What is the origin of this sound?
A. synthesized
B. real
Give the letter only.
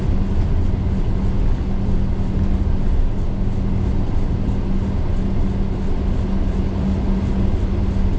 B